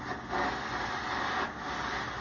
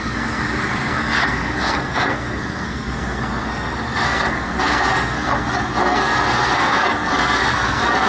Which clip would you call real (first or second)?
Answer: first